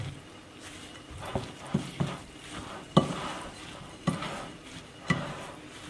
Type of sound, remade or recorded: recorded